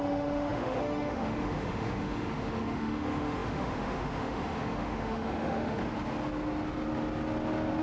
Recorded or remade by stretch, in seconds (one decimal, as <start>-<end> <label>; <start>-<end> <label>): 0.0-5.8 remade; 5.8-7.8 recorded